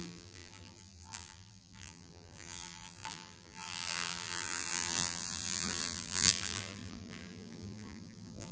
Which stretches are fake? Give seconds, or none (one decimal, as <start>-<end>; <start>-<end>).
0.0-8.5